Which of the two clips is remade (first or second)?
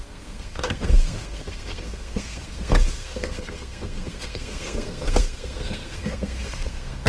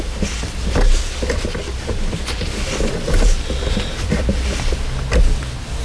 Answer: first